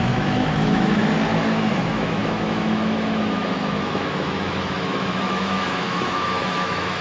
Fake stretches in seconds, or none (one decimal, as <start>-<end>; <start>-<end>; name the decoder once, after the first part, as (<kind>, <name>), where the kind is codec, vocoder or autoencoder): 0.0-1.0 (autoencoder, DAC-VAE); 1.7-7.0